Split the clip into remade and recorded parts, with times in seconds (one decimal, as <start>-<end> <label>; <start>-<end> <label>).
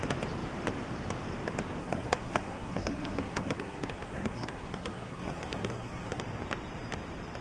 0.0-1.8 recorded; 1.8-6.2 remade; 6.2-7.4 recorded